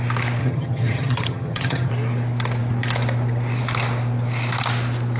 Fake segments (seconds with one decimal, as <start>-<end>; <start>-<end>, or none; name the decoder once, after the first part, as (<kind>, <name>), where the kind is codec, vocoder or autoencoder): 0.4-1.9 (vocoder, HiFi-GAN)